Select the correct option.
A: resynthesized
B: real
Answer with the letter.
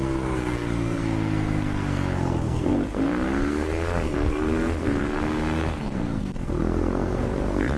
A